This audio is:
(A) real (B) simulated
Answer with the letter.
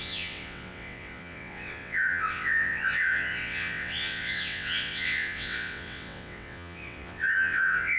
B